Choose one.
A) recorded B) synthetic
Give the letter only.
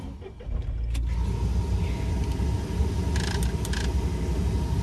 A